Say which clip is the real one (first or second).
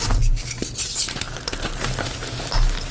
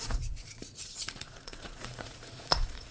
first